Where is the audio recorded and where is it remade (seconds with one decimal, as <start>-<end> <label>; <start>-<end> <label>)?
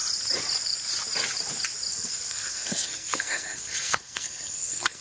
0.0-1.9 recorded; 1.9-5.0 remade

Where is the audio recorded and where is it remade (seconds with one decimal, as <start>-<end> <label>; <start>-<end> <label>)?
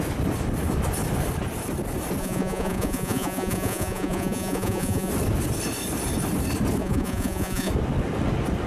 0.0-2.2 recorded; 2.2-5.1 remade; 5.1-6.8 recorded; 6.8-7.7 remade; 7.7-8.7 recorded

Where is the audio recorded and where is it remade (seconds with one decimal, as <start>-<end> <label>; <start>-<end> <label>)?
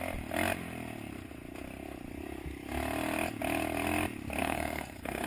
0.0-4.4 recorded; 4.4-5.3 remade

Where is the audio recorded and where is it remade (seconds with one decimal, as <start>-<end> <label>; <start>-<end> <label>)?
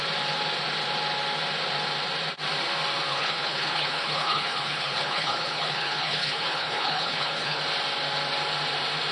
0.0-3.1 recorded; 3.1-7.6 remade; 7.6-9.1 recorded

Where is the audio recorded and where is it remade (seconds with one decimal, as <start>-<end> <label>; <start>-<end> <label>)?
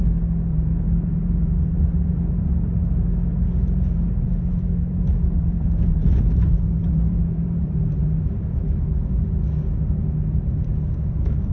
0.0-0.5 recorded; 0.5-2.5 remade; 2.5-3.3 recorded; 3.3-6.1 remade; 6.1-6.8 recorded; 6.8-9.4 remade; 9.4-11.5 recorded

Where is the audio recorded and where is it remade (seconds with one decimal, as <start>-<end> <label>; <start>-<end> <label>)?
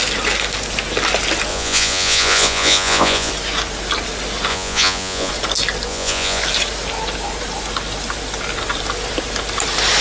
0.0-1.5 recorded; 1.5-3.3 remade; 3.3-4.5 recorded; 4.5-5.3 remade; 5.3-5.9 recorded; 5.9-6.4 remade; 6.4-10.0 recorded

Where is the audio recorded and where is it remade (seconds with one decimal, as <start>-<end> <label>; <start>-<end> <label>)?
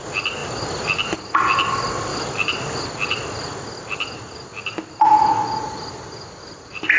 0.0-7.0 recorded